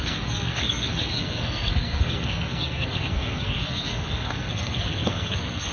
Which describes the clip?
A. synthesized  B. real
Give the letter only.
A